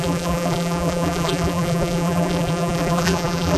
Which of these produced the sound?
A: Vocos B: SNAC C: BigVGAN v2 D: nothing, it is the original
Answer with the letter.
C